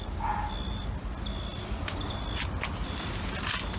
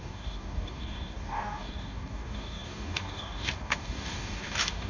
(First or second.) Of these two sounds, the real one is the first